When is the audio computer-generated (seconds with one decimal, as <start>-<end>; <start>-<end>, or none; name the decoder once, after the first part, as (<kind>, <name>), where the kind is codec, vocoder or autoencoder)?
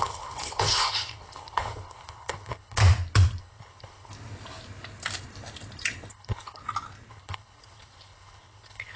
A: 0.0-2.8 (codec, HILCodec); 3.4-4.1; 6.1-6.6; 7.1-9.0